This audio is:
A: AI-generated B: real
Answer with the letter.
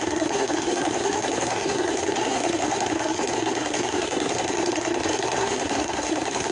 A